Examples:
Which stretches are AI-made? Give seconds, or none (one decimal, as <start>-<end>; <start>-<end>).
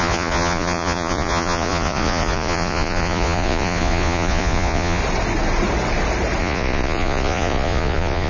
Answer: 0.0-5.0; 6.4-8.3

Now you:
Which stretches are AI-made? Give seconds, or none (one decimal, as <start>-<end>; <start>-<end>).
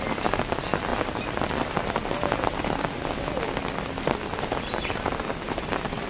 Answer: none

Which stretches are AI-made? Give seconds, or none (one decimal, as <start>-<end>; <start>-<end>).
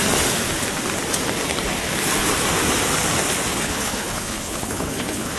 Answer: 3.5-5.4